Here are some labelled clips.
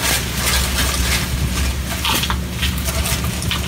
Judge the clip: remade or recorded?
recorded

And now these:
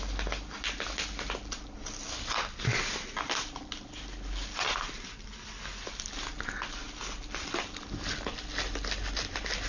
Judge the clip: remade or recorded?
recorded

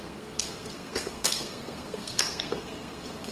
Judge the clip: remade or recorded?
remade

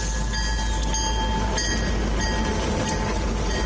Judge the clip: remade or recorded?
recorded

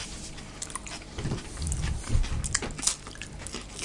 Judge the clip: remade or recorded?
recorded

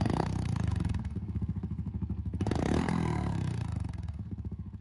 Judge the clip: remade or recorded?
remade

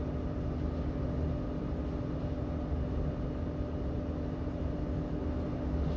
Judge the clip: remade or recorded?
recorded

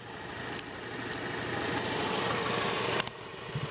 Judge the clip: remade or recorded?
recorded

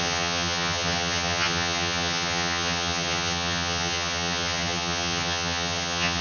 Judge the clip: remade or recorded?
remade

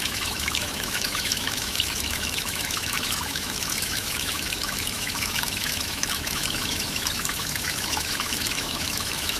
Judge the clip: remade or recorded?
remade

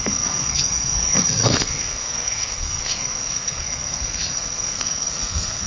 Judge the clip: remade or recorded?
remade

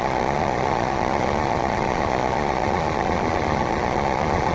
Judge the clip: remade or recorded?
remade